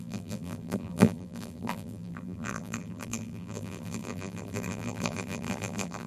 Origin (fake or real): fake